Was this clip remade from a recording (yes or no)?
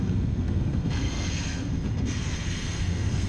yes